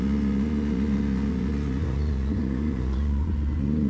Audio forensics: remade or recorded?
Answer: remade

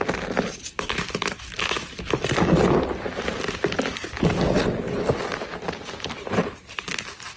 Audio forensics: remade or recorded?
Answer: recorded